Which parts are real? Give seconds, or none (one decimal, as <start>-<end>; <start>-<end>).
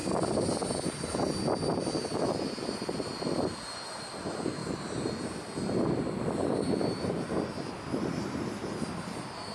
none